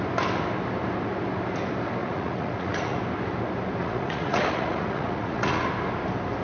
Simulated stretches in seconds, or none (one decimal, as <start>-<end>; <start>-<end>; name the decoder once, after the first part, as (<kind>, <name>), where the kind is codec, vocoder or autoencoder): 2.0-3.0 (vocoder, Vocos); 3.8-5.7